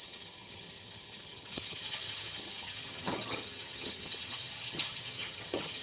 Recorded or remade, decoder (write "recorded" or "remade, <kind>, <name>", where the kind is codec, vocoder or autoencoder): remade, vocoder, HiFi-GAN